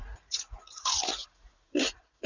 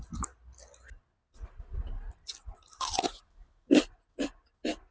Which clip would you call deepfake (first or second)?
first